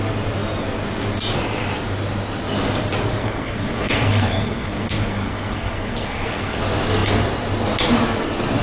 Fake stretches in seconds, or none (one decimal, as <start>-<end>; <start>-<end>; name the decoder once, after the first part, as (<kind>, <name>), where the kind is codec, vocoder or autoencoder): 3.2-6.6 (codec, SNAC)